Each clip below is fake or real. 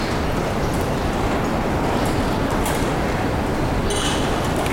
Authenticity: real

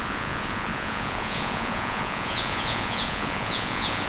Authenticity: fake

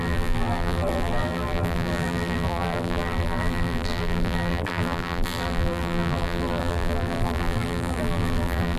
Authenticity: fake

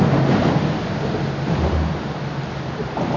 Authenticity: real